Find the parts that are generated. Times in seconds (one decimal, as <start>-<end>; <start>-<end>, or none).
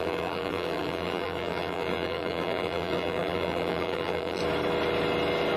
0.0-4.4